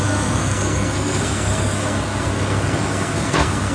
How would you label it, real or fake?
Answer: fake